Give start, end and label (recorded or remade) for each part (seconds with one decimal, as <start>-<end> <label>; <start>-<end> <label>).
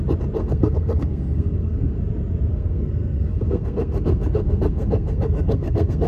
0.0-0.4 recorded; 0.4-2.0 remade; 2.0-2.5 recorded; 2.5-6.1 remade